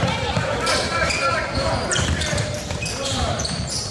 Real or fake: fake